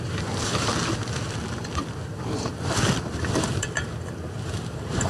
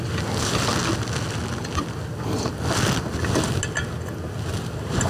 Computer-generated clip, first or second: first